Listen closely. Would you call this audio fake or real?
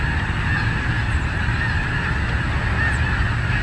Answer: real